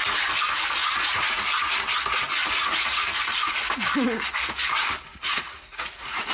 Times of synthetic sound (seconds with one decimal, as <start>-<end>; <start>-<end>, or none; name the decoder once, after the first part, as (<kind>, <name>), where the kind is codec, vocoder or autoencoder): 0.8-1.7 (vocoder, Vocos); 2.4-3.2; 5.1-6.3